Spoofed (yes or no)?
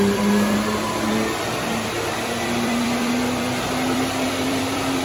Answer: yes